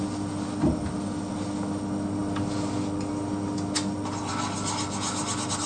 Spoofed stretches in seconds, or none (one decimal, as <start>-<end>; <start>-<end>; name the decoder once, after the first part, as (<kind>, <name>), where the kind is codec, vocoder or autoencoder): none